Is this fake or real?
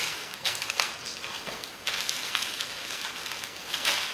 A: fake